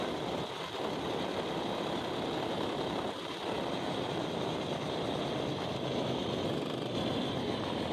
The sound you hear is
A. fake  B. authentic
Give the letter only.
B